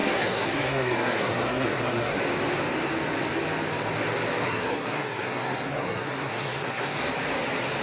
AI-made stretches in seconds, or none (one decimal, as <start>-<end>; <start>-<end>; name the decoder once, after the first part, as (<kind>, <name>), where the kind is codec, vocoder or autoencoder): 0.0-2.2 (codec, SNAC); 4.4-7.0